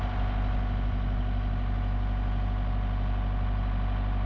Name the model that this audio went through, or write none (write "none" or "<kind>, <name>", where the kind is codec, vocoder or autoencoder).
none